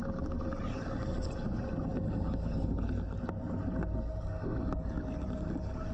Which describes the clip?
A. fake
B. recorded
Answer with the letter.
B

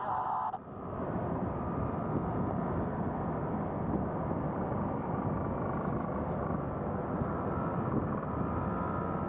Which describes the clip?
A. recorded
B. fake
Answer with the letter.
A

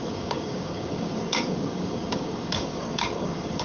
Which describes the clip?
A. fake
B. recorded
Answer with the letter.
A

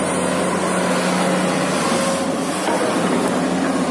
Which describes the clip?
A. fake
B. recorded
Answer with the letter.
B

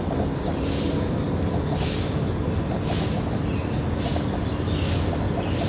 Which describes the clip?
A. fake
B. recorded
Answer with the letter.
B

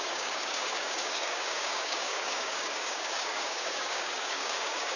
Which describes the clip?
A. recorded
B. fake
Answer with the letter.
B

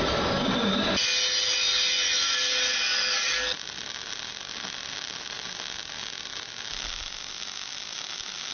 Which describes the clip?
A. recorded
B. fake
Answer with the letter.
A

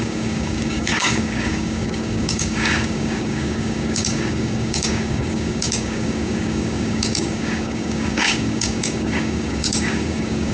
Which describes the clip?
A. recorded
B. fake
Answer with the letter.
B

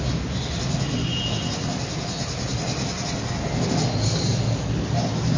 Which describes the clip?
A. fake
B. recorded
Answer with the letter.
B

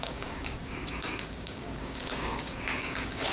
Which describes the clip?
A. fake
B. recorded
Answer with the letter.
A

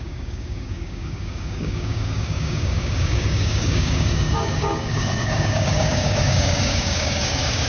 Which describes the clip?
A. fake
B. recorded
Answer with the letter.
A